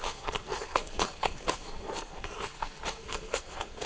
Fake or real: fake